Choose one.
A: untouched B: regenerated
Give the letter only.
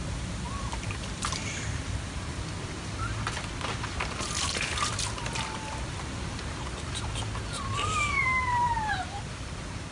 B